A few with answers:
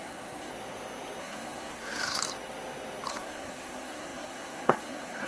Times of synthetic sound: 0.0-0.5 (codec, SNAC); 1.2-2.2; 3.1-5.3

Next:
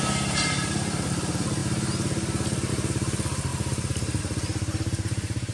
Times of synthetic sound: 0.0-1.6 (vocoder, BigVGAN v2); 2.7-5.5

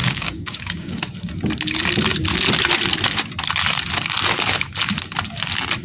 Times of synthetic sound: 0.0-1.0 (codec, DAC)

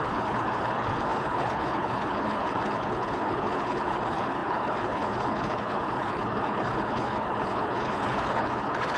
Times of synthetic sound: 0.0-9.0 (codec, HILCodec)